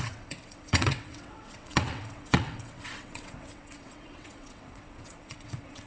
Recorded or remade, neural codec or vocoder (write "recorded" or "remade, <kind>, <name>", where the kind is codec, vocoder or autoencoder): remade, vocoder, WaveNeXt